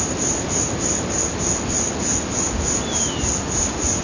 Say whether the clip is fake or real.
real